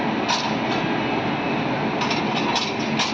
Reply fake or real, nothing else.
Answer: real